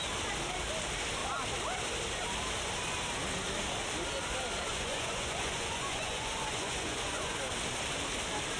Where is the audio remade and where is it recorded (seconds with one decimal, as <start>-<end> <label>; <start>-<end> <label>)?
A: 0.0-4.7 recorded; 4.7-7.4 remade; 7.4-8.6 recorded